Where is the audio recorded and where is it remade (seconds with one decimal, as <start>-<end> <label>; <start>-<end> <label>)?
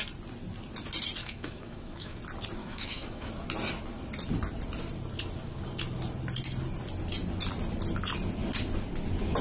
0.0-1.2 recorded; 1.2-2.2 remade; 2.2-2.6 recorded; 2.6-3.3 remade; 3.3-9.4 recorded